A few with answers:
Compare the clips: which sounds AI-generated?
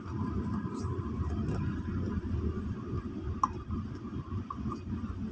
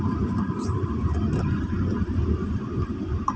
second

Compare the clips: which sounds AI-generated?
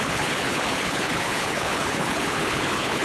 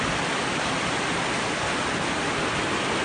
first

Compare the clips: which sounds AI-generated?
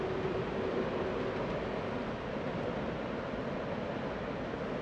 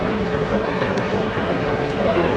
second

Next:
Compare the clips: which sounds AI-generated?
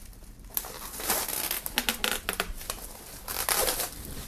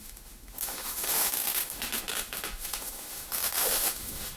second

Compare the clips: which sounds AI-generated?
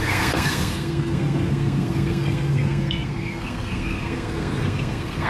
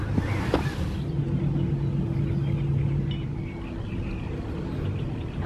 first